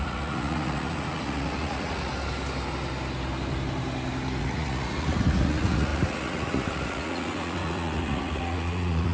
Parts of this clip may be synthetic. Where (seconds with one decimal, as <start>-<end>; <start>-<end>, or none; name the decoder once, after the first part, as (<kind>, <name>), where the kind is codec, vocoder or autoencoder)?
0.0-2.1 (vocoder, Vocos); 4.4-9.1